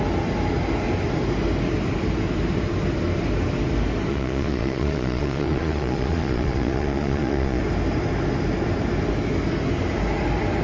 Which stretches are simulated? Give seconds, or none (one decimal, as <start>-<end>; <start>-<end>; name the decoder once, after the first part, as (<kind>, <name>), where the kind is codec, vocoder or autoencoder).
4.1-7.6 (vocoder, Vocos)